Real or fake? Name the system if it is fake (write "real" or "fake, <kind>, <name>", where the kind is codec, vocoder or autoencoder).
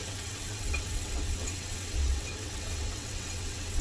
fake, vocoder, WaveNeXt